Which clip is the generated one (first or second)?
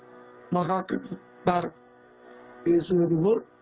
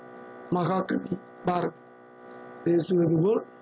first